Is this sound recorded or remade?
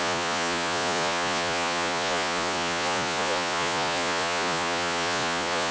remade